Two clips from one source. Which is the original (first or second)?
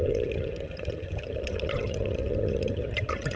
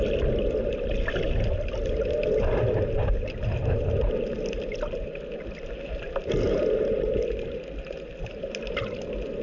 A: second